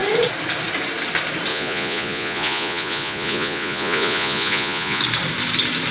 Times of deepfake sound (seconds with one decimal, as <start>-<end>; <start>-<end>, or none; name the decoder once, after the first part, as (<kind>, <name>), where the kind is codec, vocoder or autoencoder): 1.5-5.0 (vocoder, Vocos)